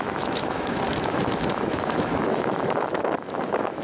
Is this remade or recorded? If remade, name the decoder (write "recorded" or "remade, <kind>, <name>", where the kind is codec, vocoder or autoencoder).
remade, autoencoder, DAC-VAE